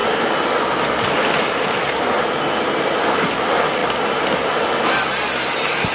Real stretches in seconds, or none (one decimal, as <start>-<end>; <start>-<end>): 0.0-5.9